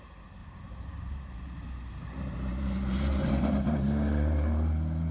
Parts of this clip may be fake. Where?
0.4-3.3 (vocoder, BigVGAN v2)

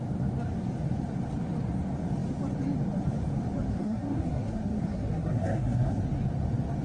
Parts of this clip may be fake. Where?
3.7-6.0 (codec, SNAC)

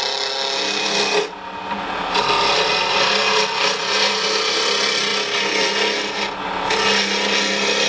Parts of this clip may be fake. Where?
none

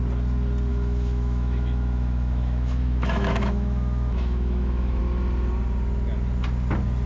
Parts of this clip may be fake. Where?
0.7-5.0 (autoencoder, DAC-VAE)

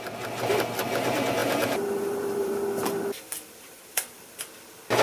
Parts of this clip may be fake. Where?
1.4-4.4 (vocoder, BigVGAN v2)